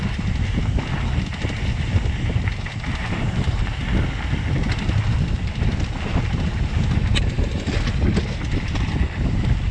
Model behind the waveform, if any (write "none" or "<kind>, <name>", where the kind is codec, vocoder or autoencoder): none